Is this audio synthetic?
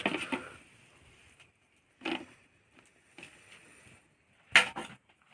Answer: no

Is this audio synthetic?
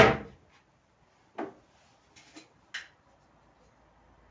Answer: no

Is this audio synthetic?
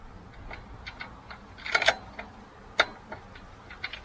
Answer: no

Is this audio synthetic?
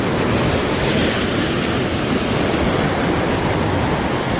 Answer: no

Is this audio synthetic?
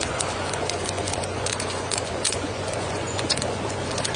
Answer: yes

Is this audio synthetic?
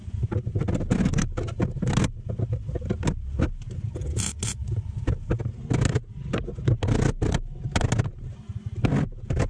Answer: no